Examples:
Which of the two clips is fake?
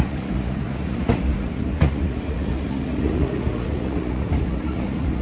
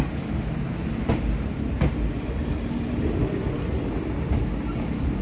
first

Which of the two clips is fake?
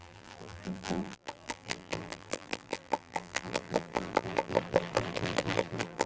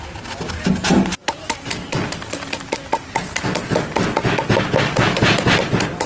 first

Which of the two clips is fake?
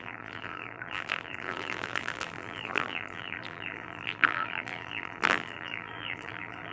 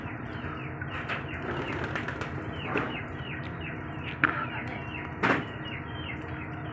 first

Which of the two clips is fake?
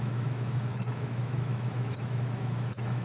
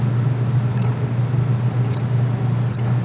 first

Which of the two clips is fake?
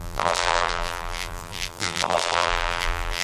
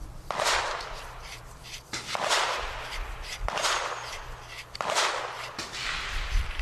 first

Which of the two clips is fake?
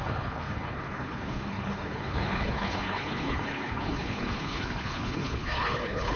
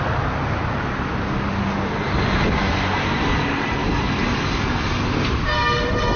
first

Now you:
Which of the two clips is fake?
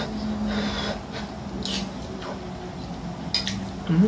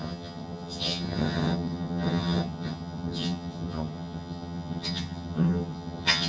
second